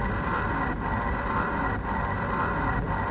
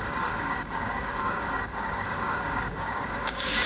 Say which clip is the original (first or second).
first